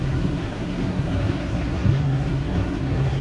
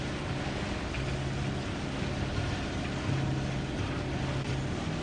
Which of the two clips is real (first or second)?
second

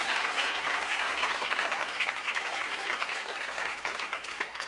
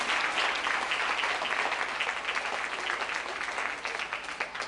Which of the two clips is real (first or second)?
second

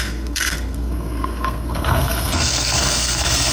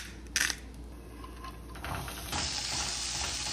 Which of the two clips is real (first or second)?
second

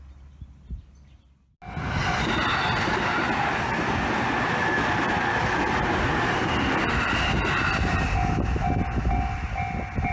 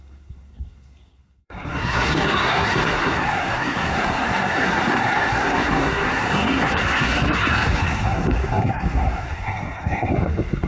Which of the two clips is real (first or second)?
first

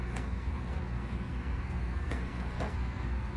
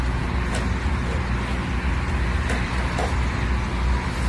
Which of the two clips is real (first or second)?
second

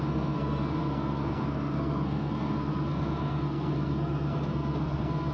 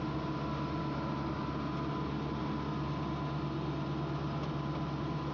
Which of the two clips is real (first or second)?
second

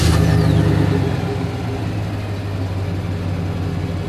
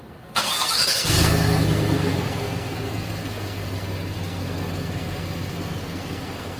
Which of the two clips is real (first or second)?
first